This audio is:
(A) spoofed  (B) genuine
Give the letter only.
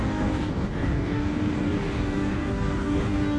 A